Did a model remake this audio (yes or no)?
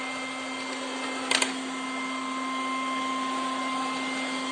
no